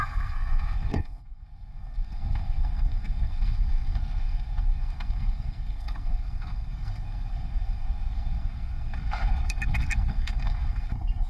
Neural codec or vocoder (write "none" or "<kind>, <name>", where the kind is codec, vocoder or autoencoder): codec, SNAC